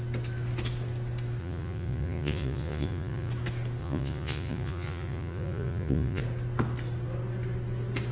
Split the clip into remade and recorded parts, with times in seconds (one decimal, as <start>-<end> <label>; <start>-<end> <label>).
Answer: 0.0-1.4 recorded; 1.4-3.3 remade; 3.3-3.8 recorded; 3.8-6.2 remade; 6.2-8.1 recorded